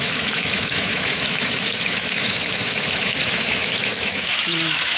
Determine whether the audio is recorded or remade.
remade